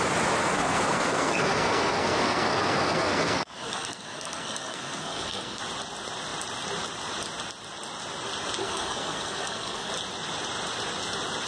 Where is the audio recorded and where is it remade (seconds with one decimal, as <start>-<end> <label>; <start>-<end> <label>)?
0.0-0.4 recorded; 0.4-5.6 remade; 5.6-8.6 recorded; 8.6-9.9 remade; 9.9-11.5 recorded